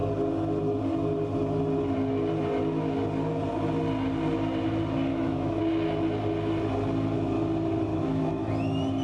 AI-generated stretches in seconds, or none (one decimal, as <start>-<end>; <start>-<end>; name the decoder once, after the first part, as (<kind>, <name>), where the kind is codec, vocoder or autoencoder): 5.1-5.6 (autoencoder, DAC-VAE); 7.9-8.5